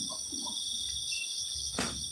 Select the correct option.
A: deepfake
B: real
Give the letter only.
B